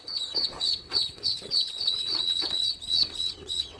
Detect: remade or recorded remade